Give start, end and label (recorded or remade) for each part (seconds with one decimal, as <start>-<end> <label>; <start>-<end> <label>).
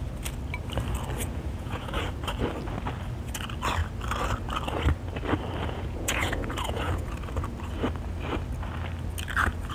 0.0-1.2 recorded; 1.2-2.0 remade; 2.0-5.6 recorded; 5.6-7.1 remade; 7.1-9.7 recorded